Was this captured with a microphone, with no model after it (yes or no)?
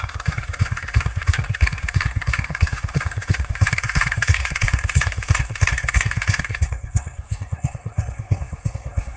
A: no